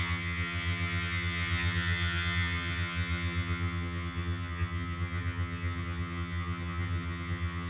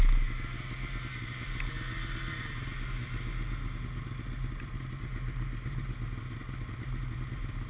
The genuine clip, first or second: second